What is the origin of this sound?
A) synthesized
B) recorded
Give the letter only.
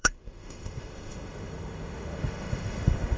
A